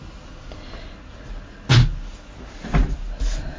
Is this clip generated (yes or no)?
no